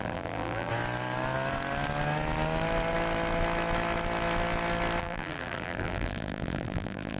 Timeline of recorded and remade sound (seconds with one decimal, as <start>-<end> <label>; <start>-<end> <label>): 0.0-0.7 remade; 0.7-5.0 recorded; 5.0-7.2 remade